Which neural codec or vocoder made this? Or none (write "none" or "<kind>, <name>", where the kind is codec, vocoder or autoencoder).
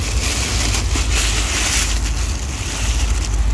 none